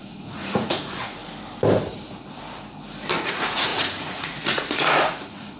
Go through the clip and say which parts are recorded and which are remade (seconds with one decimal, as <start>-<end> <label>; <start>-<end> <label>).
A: 0.0-1.2 remade; 1.2-3.2 recorded; 3.2-5.6 remade